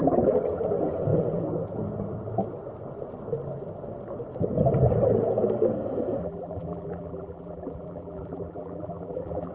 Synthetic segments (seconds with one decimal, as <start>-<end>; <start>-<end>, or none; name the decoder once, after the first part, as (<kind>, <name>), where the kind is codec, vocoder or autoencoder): 6.2-9.5 (vocoder, BigVGAN v2)